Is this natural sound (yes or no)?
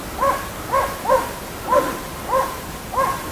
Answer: yes